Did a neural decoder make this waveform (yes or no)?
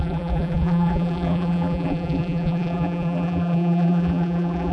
yes